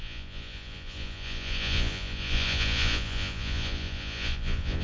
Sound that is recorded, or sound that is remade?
remade